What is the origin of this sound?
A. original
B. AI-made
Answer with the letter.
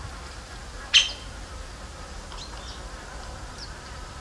A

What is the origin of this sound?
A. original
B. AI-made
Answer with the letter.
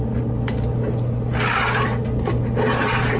A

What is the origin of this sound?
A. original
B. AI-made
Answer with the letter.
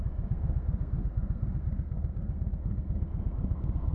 B